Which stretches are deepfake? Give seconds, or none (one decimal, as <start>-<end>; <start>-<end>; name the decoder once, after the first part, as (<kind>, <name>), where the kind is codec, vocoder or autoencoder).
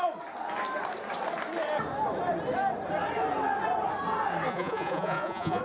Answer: 4.5-5.6 (vocoder, Vocos)